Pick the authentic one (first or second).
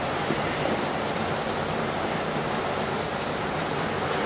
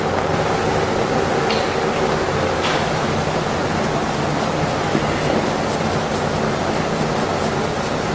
second